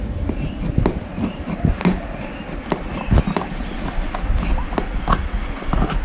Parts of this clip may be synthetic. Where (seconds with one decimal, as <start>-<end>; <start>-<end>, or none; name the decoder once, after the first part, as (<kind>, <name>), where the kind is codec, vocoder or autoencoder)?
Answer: none